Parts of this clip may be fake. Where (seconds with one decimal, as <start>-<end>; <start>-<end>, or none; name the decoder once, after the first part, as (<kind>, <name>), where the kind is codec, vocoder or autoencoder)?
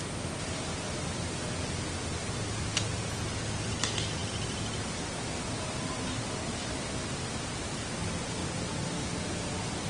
none